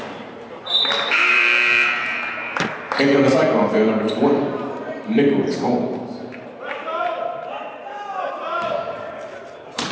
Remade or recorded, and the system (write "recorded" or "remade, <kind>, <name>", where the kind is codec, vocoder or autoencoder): remade, vocoder, BigVGAN v2